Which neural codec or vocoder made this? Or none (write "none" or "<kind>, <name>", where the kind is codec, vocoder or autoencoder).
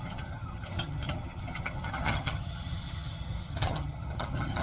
vocoder, HiFi-GAN